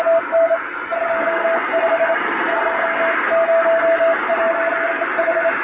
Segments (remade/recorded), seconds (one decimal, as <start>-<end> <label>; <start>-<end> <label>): 0.0-5.6 recorded